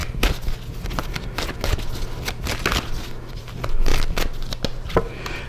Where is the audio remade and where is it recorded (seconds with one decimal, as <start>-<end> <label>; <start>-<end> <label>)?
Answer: 0.0-3.3 recorded; 3.3-3.9 remade; 3.9-5.0 recorded; 5.0-5.5 remade